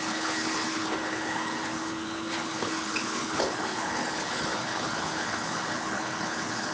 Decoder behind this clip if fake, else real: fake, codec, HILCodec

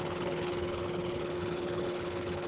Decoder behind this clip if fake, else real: fake, codec, HILCodec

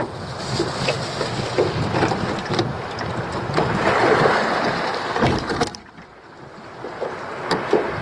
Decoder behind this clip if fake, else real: real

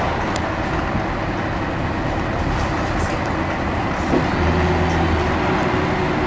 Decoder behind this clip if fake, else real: real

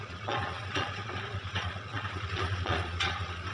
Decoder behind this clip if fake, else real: fake, vocoder, Vocos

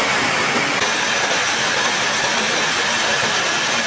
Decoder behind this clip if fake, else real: real